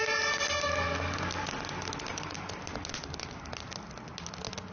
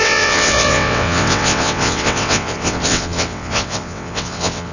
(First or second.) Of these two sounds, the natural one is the first